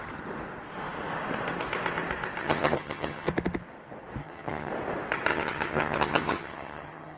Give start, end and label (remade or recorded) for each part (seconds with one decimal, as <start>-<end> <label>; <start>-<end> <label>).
0.0-2.4 recorded; 2.4-3.3 remade; 3.3-4.2 recorded; 4.2-4.7 remade; 4.7-5.3 recorded; 5.3-7.2 remade